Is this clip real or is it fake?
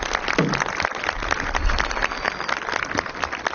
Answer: real